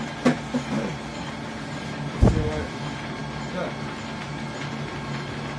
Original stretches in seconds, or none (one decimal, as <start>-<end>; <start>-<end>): 0.0-5.6